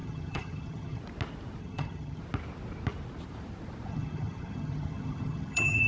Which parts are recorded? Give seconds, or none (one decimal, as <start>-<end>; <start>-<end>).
1.0-1.6; 2.2-3.9

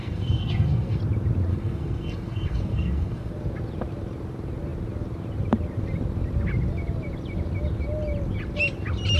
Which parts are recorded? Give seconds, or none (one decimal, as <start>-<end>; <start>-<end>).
1.0-1.5; 3.3-9.2

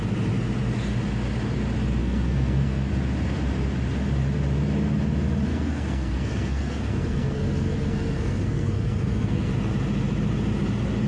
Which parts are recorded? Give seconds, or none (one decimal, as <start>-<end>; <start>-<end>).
0.0-2.0; 2.9-5.5; 9.5-11.1

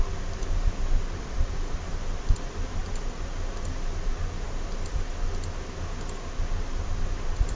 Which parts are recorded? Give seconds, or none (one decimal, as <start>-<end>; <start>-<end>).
0.0-7.6